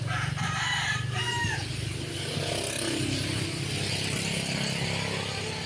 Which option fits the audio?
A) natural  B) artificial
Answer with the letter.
A